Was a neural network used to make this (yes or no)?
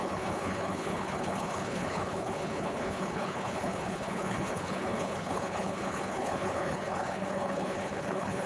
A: yes